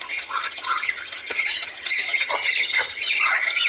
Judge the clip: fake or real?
fake